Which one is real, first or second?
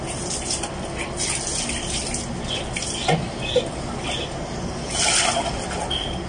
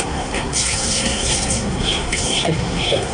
first